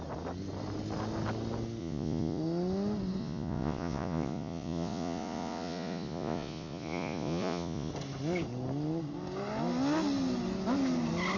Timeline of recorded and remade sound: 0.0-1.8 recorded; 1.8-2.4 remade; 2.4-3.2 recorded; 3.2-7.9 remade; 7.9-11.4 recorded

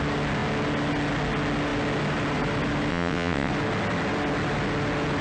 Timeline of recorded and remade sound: 0.0-2.9 recorded; 2.9-3.5 remade; 3.5-5.2 recorded